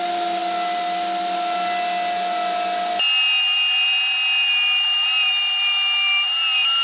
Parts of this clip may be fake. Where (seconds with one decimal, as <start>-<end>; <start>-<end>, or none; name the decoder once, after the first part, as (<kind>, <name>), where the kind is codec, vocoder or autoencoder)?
none